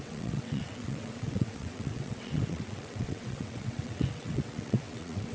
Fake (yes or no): yes